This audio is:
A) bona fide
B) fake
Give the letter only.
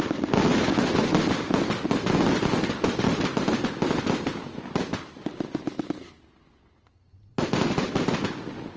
A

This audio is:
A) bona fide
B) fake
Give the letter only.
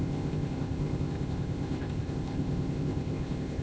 B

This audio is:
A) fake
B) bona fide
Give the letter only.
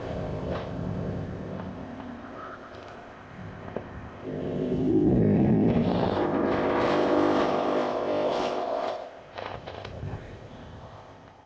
A